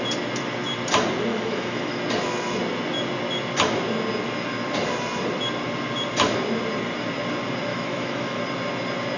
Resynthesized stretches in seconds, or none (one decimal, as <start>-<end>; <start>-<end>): 1.3-2.0; 7.7-8.4